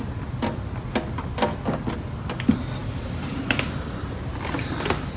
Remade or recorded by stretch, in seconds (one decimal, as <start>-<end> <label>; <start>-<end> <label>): 0.0-5.2 recorded